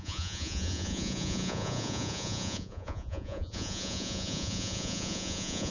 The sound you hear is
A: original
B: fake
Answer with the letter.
B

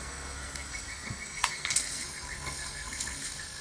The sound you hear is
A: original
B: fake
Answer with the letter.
B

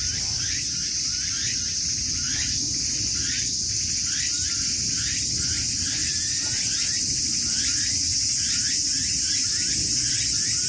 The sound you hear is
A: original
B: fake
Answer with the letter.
A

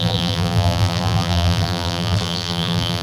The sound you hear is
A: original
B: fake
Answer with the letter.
B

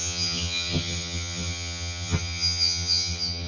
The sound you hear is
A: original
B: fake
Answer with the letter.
B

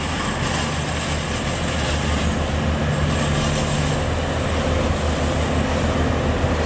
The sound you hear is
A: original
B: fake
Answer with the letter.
A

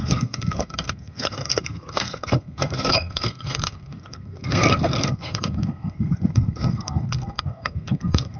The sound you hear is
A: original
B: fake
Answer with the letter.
B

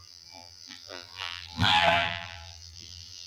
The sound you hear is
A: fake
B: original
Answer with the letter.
A